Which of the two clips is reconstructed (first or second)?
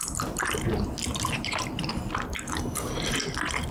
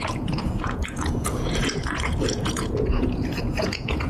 second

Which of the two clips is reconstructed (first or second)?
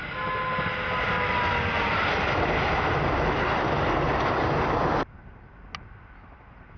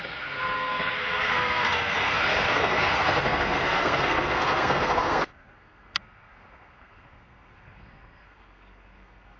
second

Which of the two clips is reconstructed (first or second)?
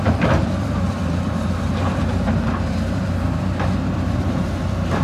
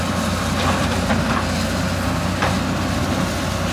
first